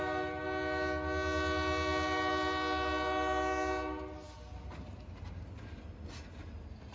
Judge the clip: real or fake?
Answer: real